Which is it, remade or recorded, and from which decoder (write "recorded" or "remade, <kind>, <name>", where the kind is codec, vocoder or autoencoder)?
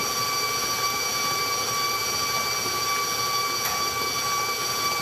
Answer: recorded